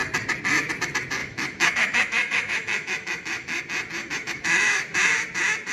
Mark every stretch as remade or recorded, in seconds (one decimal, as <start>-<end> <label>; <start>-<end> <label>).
0.0-1.2 recorded; 1.2-3.6 remade; 3.6-4.0 recorded; 4.0-4.8 remade; 4.8-5.7 recorded